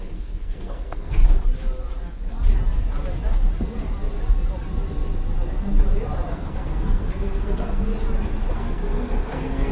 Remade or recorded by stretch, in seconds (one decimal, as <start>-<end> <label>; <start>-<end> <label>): 0.0-1.2 remade; 1.2-6.3 recorded; 6.3-7.9 remade; 7.9-8.5 recorded; 8.5-9.7 remade

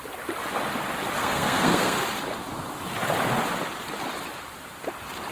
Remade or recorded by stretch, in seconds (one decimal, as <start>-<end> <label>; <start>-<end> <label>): 0.0-1.2 recorded; 1.2-2.0 remade; 2.0-5.3 recorded